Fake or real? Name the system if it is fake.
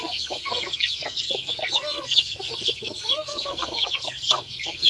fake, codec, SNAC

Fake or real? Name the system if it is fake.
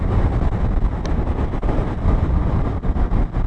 real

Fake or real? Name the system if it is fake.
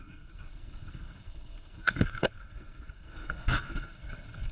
fake, codec, SNAC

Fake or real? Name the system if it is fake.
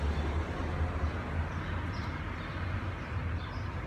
real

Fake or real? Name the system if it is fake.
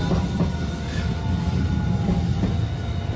real